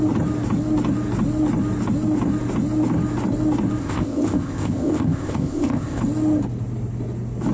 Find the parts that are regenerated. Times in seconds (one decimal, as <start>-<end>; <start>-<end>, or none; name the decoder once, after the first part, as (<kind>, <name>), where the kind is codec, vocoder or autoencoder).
3.8-6.0 (codec, ZipCodec)